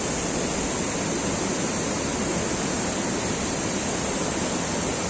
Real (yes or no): yes